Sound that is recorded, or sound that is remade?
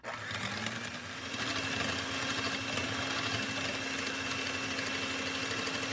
recorded